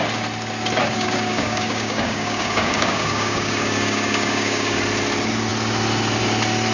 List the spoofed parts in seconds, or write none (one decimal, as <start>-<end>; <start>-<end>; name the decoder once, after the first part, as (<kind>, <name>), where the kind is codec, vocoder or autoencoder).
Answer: 0.8-4.8 (codec, DAC)